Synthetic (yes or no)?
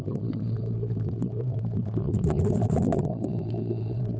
yes